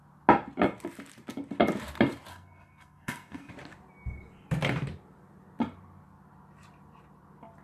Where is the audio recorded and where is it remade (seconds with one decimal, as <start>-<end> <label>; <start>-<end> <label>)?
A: 0.0-2.3 recorded; 2.3-3.5 remade; 3.5-7.6 recorded

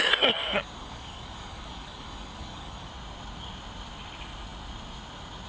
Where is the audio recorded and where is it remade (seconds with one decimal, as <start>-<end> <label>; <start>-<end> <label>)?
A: 0.0-0.4 recorded; 0.4-2.9 remade; 2.9-5.5 recorded